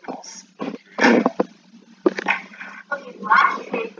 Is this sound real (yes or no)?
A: yes